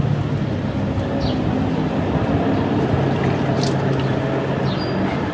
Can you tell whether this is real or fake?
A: real